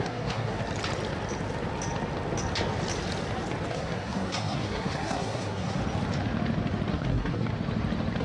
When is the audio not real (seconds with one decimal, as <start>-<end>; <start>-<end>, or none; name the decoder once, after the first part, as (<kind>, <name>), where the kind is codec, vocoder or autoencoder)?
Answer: 0.0-0.6 (codec, SNAC); 3.7-5.8; 6.9-7.5

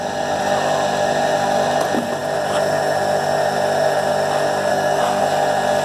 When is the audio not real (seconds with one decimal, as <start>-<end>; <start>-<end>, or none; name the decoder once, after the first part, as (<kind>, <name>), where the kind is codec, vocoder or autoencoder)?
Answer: 4.7-5.2 (codec, SNAC)

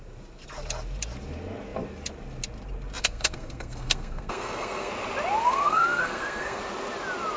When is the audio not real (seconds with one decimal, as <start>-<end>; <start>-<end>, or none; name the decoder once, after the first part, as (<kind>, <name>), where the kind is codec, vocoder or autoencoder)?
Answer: 3.0-4.9 (codec, SNAC); 5.4-6.6

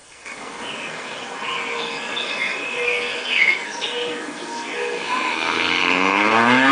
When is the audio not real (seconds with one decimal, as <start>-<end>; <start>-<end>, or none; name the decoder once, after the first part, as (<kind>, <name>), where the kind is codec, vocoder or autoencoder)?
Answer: 0.0-6.7 (codec, SNAC)

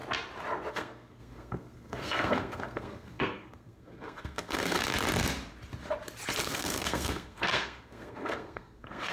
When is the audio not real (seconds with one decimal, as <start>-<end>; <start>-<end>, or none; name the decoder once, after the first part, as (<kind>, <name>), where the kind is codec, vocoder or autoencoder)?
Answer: 0.7-4.8 (codec, SNAC); 6.4-9.1

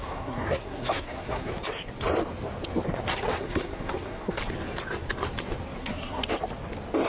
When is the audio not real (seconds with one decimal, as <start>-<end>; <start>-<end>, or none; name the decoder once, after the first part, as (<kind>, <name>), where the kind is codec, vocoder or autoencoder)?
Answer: 0.0-1.5 (codec, SNAC); 3.1-4.4; 5.8-6.3

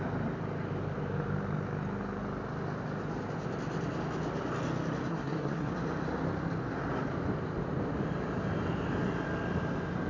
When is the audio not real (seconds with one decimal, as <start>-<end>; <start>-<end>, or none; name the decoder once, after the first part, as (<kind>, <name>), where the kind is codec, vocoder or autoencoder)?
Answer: 5.1-5.7 (codec, SNAC)

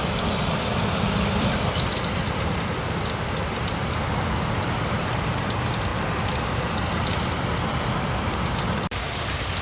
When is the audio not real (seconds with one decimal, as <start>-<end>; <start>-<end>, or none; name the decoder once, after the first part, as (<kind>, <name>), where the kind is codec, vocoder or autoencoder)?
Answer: none